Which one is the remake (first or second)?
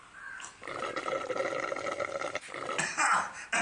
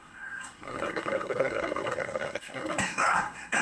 second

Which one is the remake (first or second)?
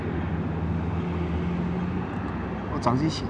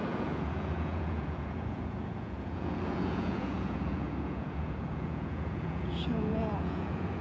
second